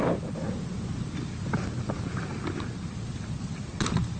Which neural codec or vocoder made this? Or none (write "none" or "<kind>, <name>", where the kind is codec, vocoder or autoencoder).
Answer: none